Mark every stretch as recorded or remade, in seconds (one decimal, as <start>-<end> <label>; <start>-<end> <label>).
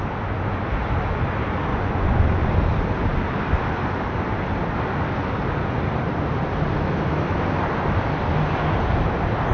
0.0-1.7 recorded; 1.7-2.5 remade; 2.5-9.5 recorded